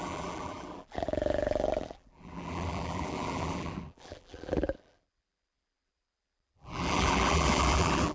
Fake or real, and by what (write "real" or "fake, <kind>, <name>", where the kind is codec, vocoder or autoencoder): fake, vocoder, BigVGAN v2